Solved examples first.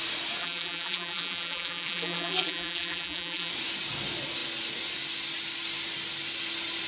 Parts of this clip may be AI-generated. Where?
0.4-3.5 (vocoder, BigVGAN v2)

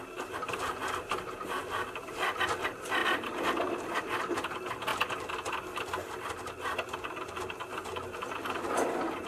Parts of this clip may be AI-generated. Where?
none

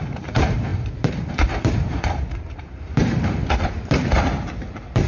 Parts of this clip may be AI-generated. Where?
0.0-5.1 (vocoder, BigVGAN v2)

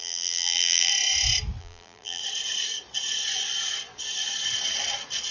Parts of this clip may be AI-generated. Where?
0.0-0.9 (vocoder, BigVGAN v2); 1.6-2.2

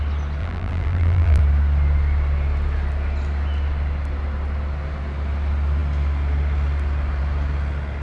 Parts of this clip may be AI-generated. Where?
0.4-1.4 (vocoder, BigVGAN v2)

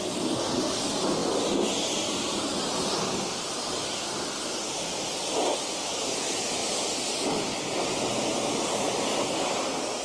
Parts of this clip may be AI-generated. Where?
8.1-9.4 (vocoder, BigVGAN v2)